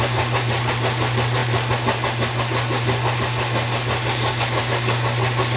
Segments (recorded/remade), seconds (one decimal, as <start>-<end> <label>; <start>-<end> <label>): 0.0-5.6 recorded